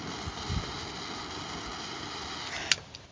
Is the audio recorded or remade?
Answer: recorded